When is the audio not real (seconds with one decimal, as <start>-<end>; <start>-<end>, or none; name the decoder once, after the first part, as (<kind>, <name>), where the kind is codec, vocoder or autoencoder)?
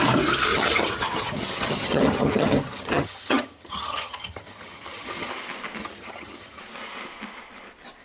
0.5-5.3 (vocoder, HiFi-GAN); 5.8-6.6